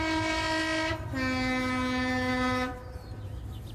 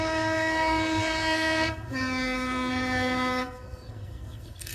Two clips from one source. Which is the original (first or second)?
first